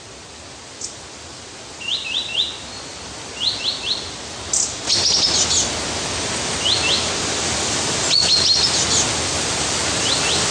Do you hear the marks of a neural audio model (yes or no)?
no